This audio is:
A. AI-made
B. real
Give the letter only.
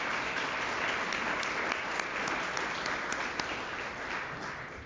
B